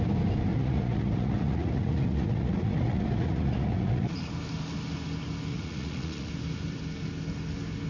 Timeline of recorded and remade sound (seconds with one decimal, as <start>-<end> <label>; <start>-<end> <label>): 0.0-0.5 recorded; 0.5-4.3 remade; 4.3-5.5 recorded; 5.5-6.3 remade; 6.3-7.9 recorded